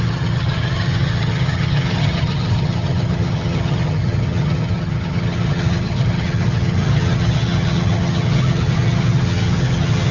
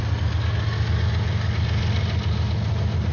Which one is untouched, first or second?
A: second